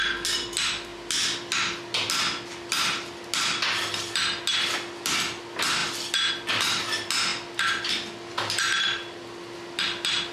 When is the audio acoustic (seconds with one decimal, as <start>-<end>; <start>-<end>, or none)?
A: 0.0-10.3